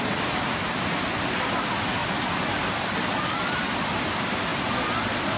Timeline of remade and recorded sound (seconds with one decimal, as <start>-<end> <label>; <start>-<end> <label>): 0.0-5.4 recorded